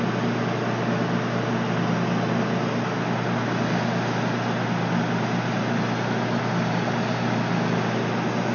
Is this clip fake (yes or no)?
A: no